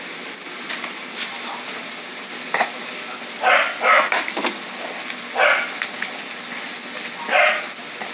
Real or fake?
real